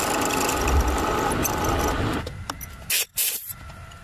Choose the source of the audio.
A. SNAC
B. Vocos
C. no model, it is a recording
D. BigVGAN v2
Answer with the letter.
C